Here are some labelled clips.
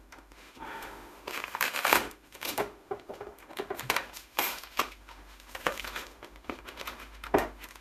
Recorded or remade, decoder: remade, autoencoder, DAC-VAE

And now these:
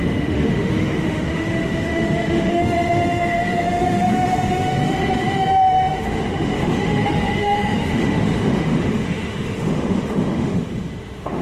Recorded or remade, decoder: remade, autoencoder, DAC-VAE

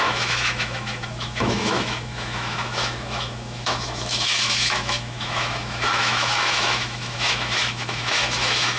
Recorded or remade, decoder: remade, autoencoder, DAC-VAE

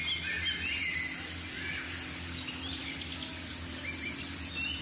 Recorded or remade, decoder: recorded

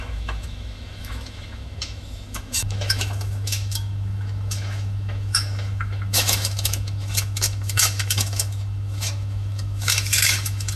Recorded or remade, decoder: remade, autoencoder, DAC-VAE